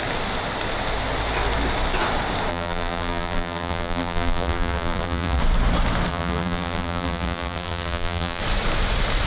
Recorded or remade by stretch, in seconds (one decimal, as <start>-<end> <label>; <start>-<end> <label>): 0.0-2.5 recorded; 2.5-5.4 remade; 5.4-6.1 recorded; 6.1-8.4 remade; 8.4-9.3 recorded